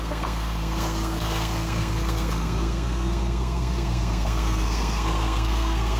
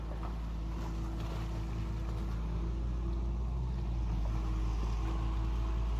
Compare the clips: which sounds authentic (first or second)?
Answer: second